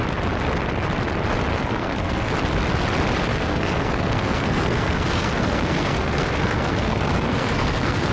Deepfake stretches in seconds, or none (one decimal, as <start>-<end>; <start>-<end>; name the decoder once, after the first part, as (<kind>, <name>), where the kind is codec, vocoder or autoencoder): 1.5-2.4 (codec, SNAC); 3.3-8.1